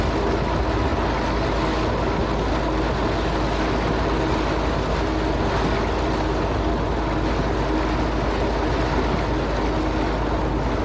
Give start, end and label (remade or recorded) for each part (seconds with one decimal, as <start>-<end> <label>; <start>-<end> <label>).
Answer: 0.0-10.8 recorded